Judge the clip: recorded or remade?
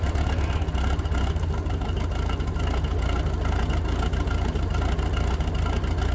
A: recorded